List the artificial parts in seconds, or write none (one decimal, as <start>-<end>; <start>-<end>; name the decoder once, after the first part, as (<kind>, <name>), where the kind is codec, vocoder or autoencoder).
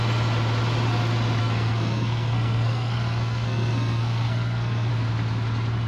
1.4-4.9 (codec, SNAC)